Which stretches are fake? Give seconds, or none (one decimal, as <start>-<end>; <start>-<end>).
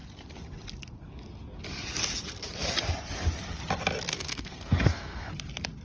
4.1-5.3